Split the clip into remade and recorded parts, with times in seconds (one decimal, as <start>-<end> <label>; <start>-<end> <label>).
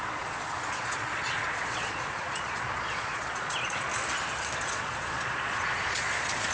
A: 0.0-3.9 remade; 3.9-4.6 recorded; 4.6-6.5 remade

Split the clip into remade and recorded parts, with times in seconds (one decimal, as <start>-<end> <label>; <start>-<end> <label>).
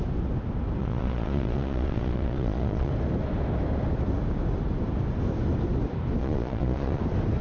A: 0.0-0.8 recorded; 0.8-2.9 remade; 2.9-6.2 recorded; 6.2-7.0 remade; 7.0-7.4 recorded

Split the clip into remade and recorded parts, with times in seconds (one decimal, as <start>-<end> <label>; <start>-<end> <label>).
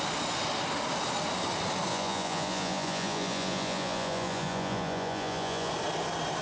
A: 0.0-1.9 recorded; 1.9-5.7 remade; 5.7-6.4 recorded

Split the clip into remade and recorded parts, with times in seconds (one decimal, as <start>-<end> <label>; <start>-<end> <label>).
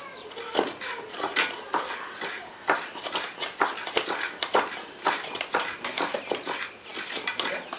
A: 0.0-7.8 recorded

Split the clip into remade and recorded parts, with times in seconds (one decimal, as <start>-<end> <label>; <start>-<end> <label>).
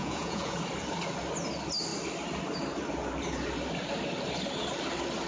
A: 0.0-0.6 remade; 0.6-5.3 recorded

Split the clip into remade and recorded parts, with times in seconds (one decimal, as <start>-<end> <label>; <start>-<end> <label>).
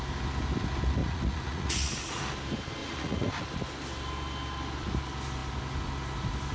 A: 0.0-1.0 recorded; 1.0-2.2 remade; 2.2-2.8 recorded; 2.8-3.3 remade; 3.3-6.5 recorded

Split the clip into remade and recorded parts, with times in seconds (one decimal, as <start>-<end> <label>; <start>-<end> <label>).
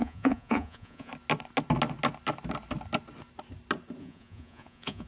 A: 0.0-1.1 remade; 1.1-4.0 recorded; 4.0-5.1 remade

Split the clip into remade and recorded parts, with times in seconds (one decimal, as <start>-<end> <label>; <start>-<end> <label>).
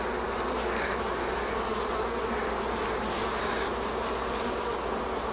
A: 0.0-5.3 recorded